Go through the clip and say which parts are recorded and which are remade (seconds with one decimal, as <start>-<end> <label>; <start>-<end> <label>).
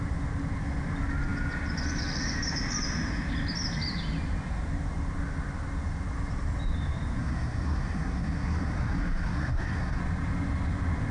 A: 0.0-7.2 recorded; 7.2-10.0 remade; 10.0-11.1 recorded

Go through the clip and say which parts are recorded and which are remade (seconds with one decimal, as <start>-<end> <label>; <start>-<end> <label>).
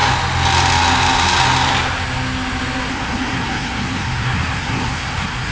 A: 0.0-2.9 recorded; 2.9-5.5 remade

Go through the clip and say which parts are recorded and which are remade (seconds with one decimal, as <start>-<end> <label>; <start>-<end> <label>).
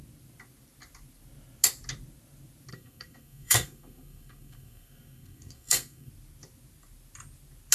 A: 0.0-2.7 recorded; 2.7-6.1 remade; 6.1-7.7 recorded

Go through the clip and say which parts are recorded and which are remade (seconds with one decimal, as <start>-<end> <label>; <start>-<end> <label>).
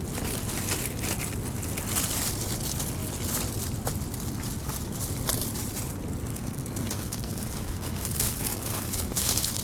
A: 0.0-6.3 recorded; 6.3-9.6 remade